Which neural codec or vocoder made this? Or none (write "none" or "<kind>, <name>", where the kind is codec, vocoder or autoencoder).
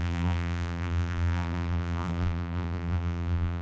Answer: vocoder, BigVGAN v2